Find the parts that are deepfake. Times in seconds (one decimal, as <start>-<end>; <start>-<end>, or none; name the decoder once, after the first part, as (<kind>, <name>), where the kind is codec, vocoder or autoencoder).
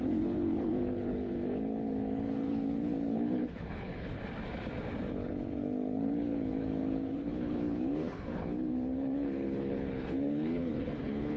0.0-4.2 (codec, HILCodec); 5.1-11.4